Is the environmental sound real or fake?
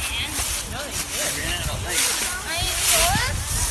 real